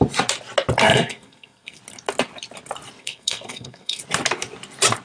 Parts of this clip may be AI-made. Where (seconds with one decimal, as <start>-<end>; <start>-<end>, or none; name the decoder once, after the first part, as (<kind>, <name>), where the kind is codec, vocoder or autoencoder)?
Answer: 0.9-1.8 (codec, SNAC); 3.0-4.0